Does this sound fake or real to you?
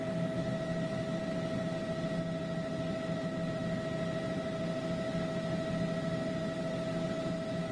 real